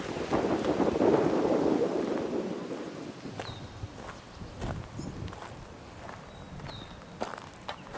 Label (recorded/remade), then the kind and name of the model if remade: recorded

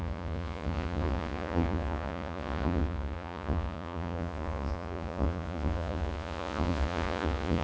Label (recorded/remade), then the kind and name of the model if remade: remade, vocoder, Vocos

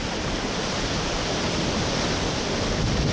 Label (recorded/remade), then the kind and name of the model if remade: recorded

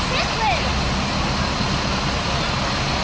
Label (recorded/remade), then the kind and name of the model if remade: recorded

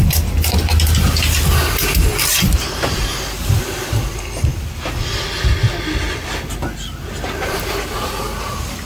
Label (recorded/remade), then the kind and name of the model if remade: recorded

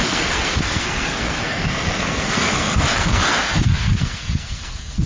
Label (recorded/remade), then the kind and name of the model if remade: remade, codec, SNAC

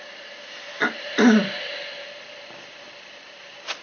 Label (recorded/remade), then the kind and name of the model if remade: recorded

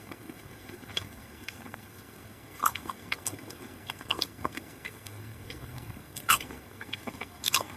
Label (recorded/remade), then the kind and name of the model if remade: remade, codec, SNAC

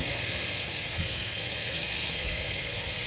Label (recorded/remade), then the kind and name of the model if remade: remade, codec, SNAC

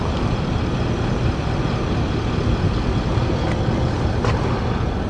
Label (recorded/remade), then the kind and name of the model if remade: recorded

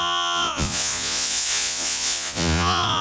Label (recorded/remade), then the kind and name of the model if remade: remade, vocoder, Vocos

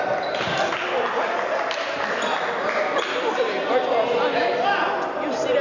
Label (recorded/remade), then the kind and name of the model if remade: recorded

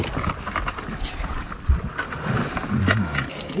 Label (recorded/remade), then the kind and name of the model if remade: recorded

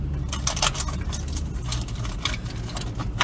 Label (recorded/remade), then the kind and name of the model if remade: recorded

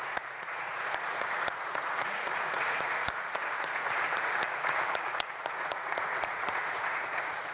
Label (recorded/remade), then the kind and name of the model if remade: remade, vocoder, Vocos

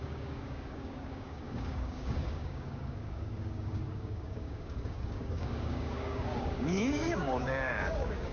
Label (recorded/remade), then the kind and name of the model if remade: remade, codec, DAC